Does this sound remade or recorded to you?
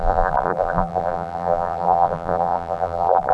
remade